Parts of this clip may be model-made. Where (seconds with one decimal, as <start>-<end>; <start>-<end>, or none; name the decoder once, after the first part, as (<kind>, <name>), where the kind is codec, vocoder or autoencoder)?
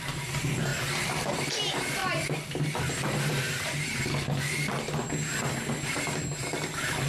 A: none